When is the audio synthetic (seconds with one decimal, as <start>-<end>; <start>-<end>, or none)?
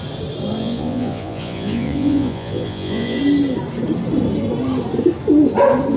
0.6-3.2